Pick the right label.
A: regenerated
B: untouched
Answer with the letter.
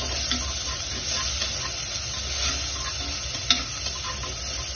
B